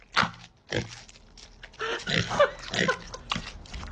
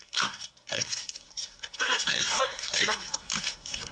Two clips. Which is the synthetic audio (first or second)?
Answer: second